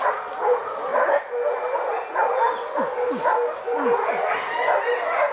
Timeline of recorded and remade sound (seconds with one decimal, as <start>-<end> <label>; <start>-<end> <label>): 0.0-5.3 recorded